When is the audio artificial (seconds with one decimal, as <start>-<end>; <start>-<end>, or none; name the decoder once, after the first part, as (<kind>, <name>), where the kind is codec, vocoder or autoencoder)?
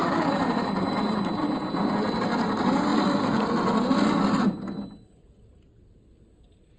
0.0-1.2 (vocoder, BigVGAN v2); 2.9-3.5